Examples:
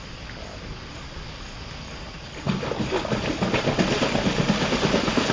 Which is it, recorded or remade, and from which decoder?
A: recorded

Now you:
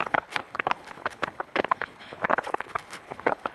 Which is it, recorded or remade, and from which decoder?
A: remade, codec, HILCodec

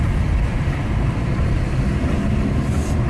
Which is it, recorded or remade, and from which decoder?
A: recorded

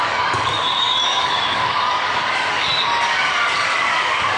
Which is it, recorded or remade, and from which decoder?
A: remade, codec, DAC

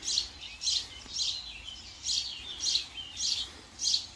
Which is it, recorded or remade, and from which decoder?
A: recorded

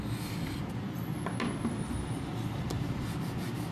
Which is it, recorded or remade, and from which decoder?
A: recorded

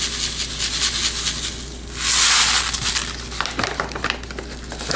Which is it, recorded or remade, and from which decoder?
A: recorded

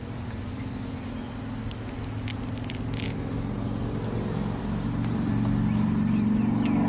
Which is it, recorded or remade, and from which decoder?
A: recorded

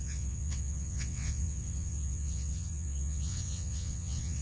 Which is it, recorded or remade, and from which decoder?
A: remade, vocoder, WaveNeXt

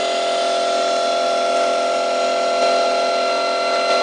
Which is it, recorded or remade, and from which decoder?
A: recorded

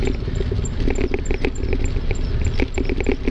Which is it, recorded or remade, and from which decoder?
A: recorded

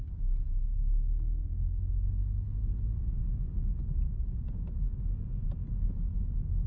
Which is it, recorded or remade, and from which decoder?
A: recorded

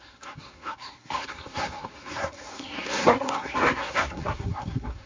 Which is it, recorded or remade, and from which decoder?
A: remade, codec, SNAC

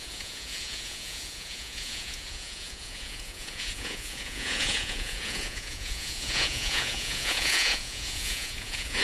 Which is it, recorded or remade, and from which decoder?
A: remade, vocoder, Vocos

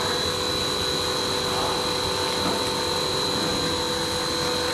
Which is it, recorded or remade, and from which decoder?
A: recorded